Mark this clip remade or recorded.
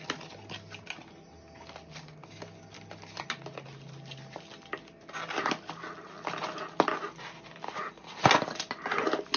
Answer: recorded